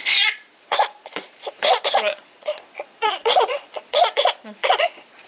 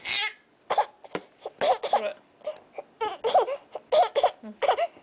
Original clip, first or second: second